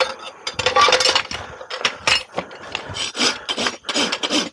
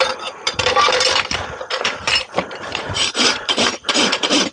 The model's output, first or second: second